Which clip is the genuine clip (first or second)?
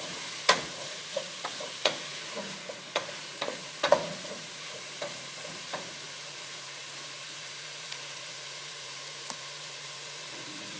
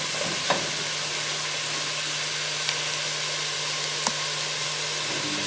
second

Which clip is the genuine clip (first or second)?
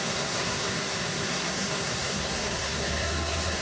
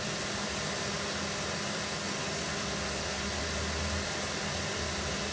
second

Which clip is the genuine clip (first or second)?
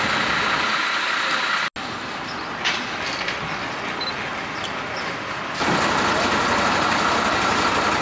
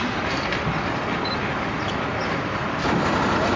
first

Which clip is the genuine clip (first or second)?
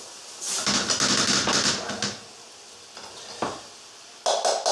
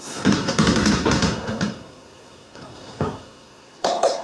first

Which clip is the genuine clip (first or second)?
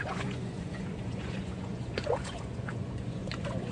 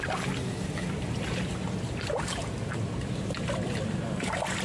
second